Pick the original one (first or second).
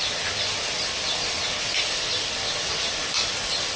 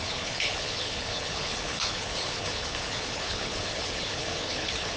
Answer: first